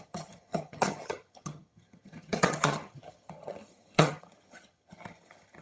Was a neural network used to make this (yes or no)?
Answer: yes